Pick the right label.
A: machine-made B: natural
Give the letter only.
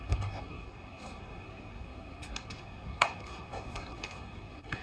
A